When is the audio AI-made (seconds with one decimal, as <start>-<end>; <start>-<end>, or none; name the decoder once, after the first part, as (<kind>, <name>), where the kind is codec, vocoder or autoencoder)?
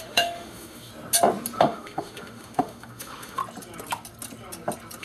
0.0-0.9 (autoencoder, DAC-VAE); 1.6-3.4